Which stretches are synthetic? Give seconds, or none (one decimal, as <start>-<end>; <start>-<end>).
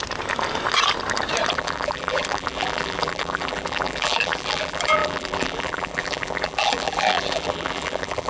1.5-8.3